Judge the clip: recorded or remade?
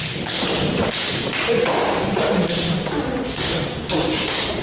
recorded